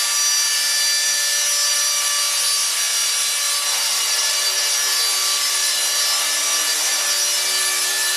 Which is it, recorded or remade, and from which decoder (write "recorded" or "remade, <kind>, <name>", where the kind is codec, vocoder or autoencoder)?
recorded